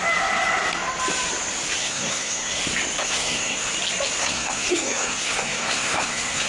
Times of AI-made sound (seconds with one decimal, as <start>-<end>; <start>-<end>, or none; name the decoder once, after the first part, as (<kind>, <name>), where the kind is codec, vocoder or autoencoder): 1.8-2.6 (codec, SNAC); 3.0-3.7; 4.2-6.5